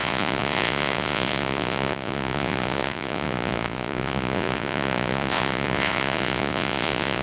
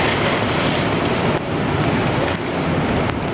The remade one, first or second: first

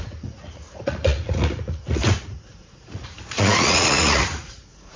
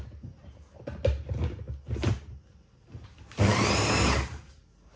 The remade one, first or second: first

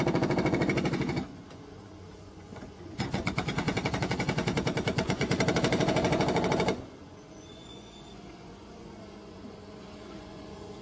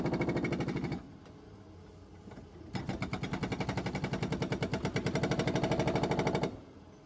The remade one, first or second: first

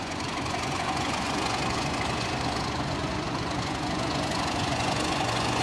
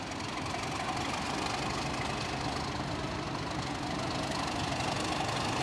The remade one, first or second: first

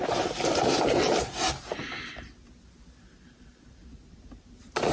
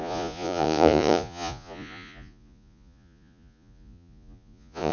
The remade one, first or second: second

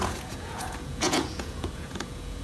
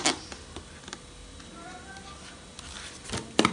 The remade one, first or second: first